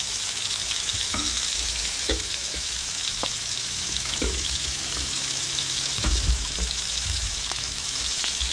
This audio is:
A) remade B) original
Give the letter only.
A